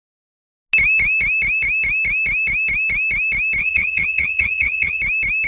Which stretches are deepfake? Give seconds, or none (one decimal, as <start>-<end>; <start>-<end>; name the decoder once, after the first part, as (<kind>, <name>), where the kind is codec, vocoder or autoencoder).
3.6-5.0 (vocoder, HiFi-GAN)